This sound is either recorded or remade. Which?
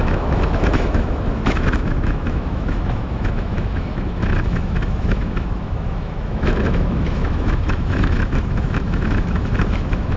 remade